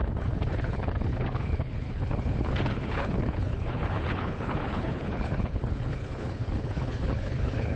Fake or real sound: fake